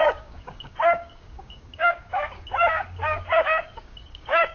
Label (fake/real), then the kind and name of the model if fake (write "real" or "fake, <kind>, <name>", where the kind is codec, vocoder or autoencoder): fake, codec, DAC